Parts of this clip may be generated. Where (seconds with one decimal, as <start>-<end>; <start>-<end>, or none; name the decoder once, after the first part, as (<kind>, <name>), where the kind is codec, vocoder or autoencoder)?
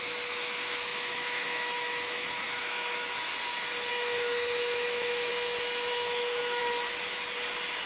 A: 0.0-3.3 (autoencoder, DAC-VAE); 3.9-5.3; 5.9-6.6